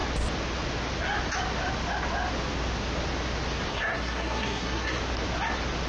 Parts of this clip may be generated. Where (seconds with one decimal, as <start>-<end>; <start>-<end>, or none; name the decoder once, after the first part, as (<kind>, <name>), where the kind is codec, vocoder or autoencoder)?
3.7-5.0 (codec, SNAC)